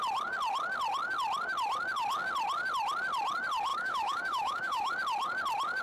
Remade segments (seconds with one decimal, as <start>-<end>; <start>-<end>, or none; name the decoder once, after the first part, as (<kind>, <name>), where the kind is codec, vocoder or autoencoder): 3.7-4.9 (autoencoder, DAC-VAE)